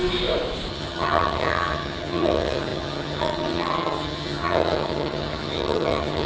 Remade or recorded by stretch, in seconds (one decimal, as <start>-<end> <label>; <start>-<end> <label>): 0.0-0.7 recorded; 0.7-6.3 remade